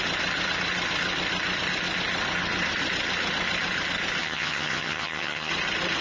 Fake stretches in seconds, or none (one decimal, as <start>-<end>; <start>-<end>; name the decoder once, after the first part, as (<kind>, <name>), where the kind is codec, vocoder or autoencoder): 4.2-5.5 (vocoder, HiFi-GAN)